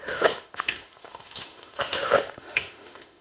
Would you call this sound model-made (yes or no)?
yes